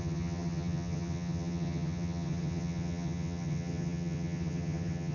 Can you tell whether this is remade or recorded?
remade